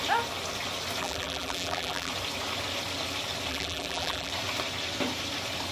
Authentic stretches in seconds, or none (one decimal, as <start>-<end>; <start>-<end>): 0.0-1.0; 2.1-3.5; 4.3-5.7